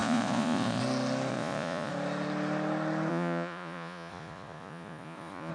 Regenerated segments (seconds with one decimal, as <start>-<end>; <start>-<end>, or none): 0.0-0.8; 1.3-1.9; 3.1-5.5